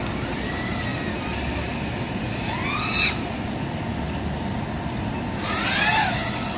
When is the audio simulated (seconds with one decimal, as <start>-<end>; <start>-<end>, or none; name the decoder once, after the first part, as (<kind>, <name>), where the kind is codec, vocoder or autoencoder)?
none